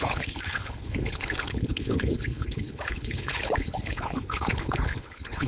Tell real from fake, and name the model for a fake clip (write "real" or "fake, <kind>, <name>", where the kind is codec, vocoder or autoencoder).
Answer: fake, codec, HILCodec